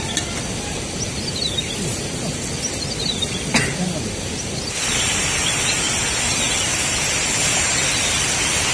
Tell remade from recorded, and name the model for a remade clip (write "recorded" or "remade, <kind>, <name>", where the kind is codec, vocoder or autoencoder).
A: recorded